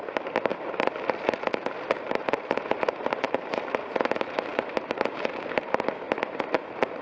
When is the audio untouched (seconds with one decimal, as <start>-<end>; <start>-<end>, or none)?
none